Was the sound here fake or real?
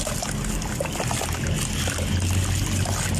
real